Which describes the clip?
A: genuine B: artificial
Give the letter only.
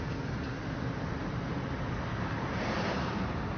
A